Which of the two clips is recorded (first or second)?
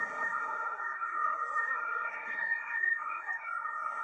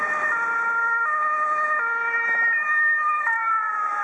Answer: second